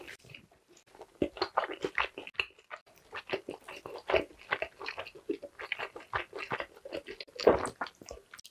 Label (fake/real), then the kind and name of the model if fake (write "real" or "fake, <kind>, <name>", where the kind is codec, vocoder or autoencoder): real